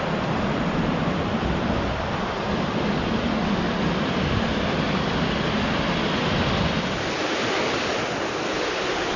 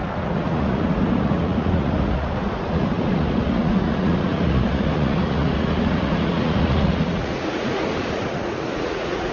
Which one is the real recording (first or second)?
first